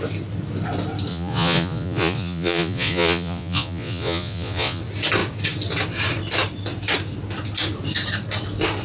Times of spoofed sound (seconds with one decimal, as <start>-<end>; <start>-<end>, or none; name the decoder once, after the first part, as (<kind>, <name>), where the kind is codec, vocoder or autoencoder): 1.1-4.8 (vocoder, Vocos)